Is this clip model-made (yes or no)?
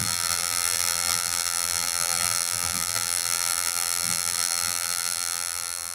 yes